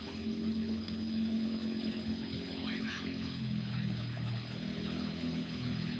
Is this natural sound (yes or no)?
no